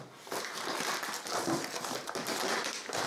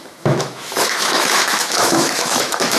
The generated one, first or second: second